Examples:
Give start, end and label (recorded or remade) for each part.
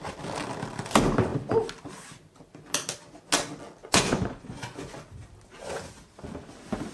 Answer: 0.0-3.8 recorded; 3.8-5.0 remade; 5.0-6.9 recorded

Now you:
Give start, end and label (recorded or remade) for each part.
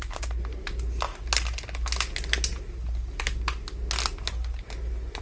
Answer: 0.0-5.2 recorded